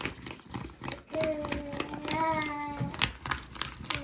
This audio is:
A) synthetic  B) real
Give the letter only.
B